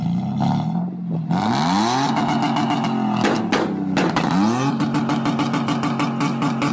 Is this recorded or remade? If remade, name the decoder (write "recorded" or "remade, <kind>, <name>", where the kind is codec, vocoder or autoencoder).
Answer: recorded